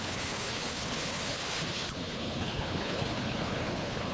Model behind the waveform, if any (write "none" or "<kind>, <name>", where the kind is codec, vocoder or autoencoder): codec, HILCodec